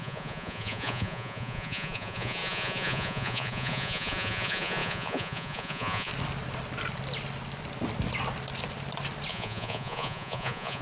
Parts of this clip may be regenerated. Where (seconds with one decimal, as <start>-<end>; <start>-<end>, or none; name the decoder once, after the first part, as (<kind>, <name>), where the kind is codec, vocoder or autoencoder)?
0.0-6.1 (vocoder, Vocos); 9.3-10.8